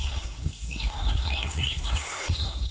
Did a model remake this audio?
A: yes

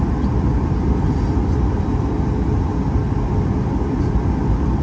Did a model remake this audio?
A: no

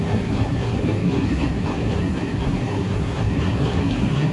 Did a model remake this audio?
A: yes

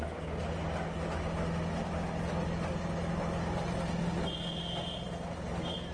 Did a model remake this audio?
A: no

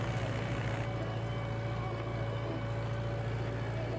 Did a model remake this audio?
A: no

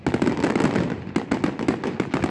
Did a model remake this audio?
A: no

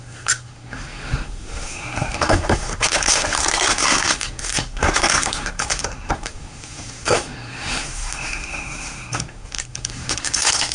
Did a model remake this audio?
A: yes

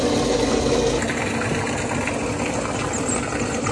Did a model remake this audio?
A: no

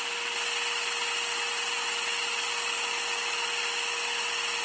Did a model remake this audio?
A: no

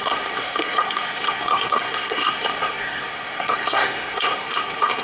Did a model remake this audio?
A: yes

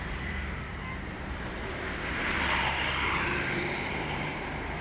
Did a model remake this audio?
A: yes